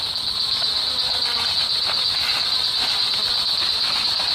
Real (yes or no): yes